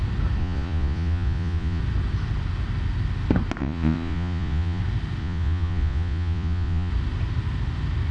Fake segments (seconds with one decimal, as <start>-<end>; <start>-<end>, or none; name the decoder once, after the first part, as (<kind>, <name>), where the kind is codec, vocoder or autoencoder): 0.4-1.8 (vocoder, Vocos); 3.6-4.8; 5.2-6.9